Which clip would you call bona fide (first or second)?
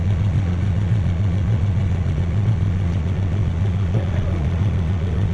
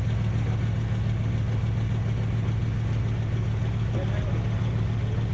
second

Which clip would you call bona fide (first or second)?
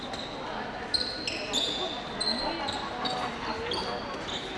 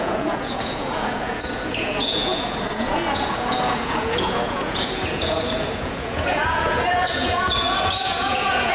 first